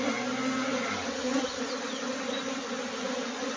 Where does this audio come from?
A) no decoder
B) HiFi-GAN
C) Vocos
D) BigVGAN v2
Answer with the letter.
A